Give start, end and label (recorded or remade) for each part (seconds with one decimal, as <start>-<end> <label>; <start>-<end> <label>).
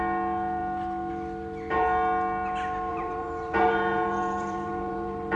0.0-2.9 recorded; 2.9-5.4 remade